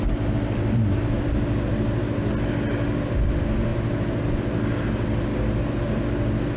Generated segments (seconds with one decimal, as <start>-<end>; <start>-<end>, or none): none